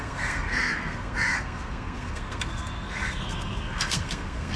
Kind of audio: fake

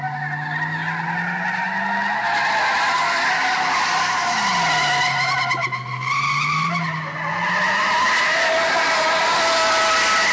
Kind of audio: real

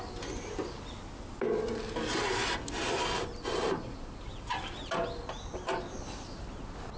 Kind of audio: real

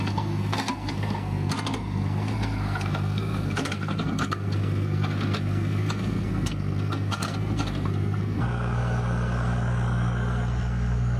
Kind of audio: fake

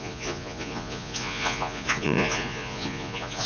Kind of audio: fake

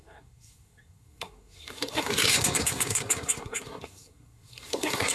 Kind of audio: fake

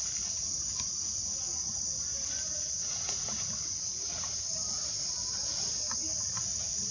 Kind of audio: real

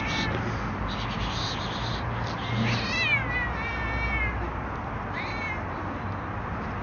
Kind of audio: real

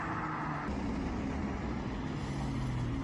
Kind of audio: real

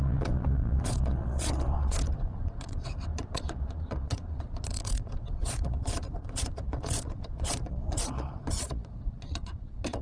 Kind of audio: fake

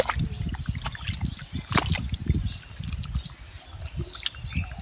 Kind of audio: real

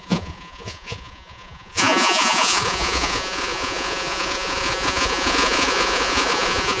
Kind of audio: fake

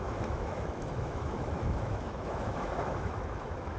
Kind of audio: fake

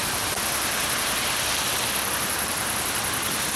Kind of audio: fake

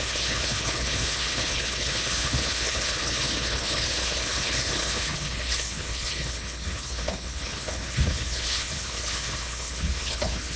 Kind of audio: fake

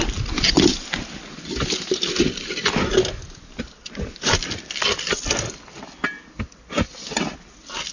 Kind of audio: real